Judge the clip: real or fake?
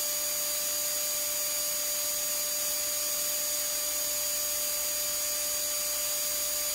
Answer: real